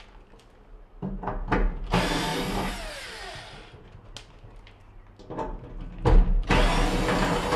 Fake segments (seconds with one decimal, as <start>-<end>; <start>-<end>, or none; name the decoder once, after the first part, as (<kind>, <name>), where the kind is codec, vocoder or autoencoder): 2.3-3.4 (vocoder, BigVGAN v2)